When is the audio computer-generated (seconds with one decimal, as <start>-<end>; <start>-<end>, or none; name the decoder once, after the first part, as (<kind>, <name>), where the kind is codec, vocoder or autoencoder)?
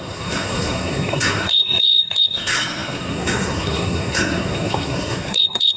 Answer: 0.0-5.8 (codec, SNAC)